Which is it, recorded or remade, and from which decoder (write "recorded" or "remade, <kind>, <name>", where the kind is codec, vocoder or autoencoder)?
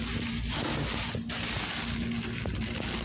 recorded